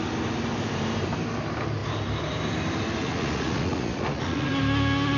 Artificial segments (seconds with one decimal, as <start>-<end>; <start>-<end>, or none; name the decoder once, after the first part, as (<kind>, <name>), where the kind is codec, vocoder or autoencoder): 3.0-4.5 (vocoder, Vocos)